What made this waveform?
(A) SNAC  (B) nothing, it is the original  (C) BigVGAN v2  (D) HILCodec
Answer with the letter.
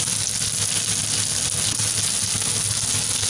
B